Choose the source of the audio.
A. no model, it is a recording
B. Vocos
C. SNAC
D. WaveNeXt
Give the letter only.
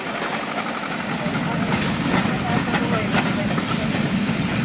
A